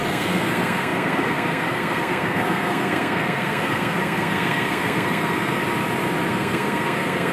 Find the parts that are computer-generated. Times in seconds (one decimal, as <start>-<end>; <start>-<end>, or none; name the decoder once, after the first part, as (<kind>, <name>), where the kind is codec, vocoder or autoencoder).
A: 0.0-5.6 (codec, SNAC); 6.3-7.3